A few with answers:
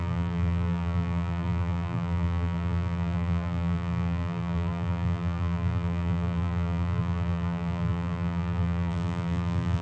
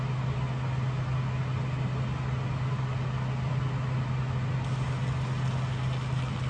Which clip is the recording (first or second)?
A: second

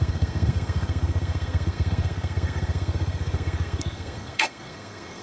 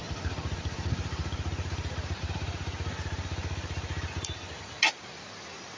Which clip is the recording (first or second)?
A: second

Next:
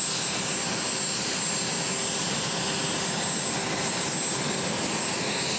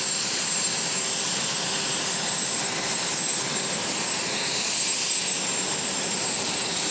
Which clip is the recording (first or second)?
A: first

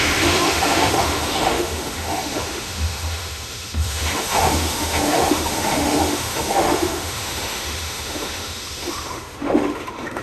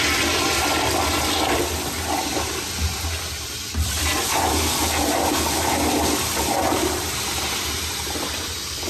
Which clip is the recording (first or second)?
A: second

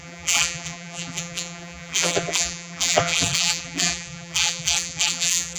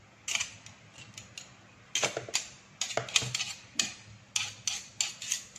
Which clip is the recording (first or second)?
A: second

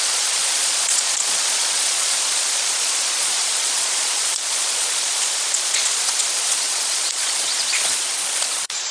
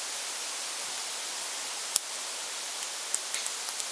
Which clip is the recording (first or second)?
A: second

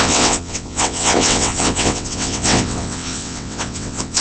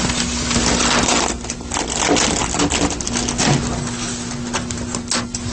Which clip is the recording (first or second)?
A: second